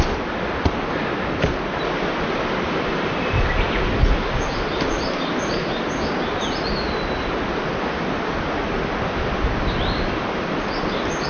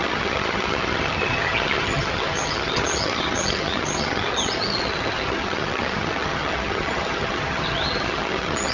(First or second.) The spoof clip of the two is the second